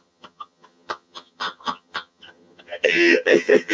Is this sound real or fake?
fake